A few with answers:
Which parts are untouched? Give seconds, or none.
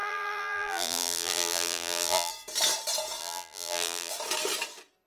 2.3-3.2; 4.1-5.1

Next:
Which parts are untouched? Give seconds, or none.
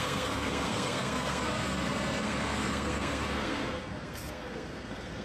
none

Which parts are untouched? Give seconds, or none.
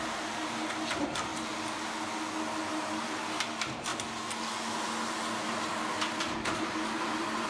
1.3-2.7; 3.9-6.2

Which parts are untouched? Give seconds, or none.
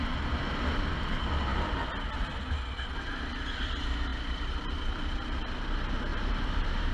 0.0-4.1; 5.5-6.1